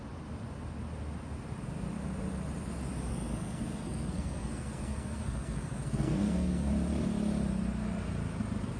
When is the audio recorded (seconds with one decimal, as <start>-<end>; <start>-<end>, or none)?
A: 0.0-3.1; 6.7-8.8